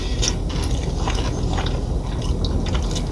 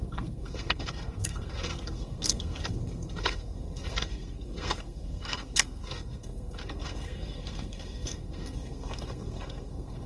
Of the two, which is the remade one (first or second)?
second